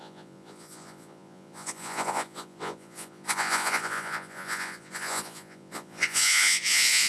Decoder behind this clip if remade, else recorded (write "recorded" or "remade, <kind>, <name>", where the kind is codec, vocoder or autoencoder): remade, vocoder, Vocos